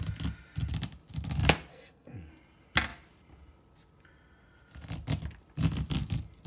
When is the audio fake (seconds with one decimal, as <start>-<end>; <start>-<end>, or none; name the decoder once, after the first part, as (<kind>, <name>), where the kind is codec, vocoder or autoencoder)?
1.7-2.3 (codec, SNAC)